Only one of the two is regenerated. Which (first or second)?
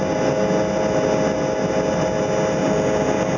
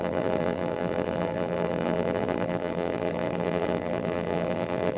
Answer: second